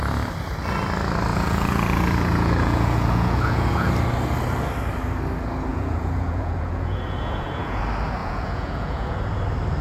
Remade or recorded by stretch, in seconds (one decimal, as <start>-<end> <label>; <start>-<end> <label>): 0.0-1.3 recorded; 1.3-3.9 remade; 3.9-5.7 recorded; 5.7-7.8 remade; 7.8-8.2 recorded; 8.2-9.3 remade; 9.3-9.8 recorded